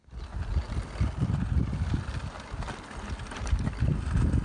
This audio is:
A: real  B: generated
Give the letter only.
A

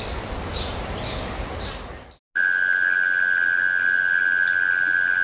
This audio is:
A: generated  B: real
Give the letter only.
B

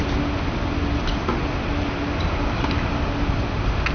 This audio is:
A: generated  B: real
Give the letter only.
B